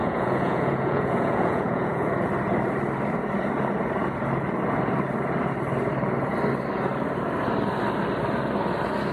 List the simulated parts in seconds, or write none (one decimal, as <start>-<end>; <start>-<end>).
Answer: 0.0-2.1